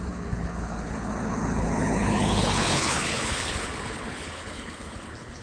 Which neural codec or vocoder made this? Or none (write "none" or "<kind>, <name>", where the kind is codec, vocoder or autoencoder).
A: codec, HILCodec